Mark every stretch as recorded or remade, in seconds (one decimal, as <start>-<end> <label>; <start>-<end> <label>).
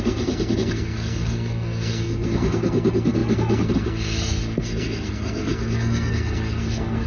0.0-7.1 remade